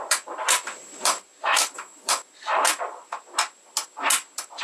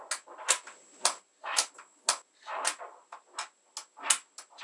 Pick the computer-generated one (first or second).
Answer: first